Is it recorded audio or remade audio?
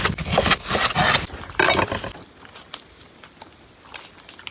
recorded